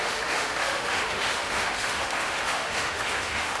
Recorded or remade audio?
remade